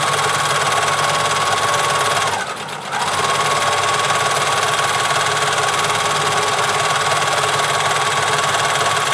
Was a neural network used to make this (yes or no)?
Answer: no